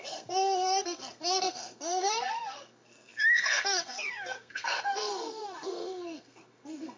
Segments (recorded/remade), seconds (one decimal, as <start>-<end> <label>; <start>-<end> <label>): 0.0-7.0 remade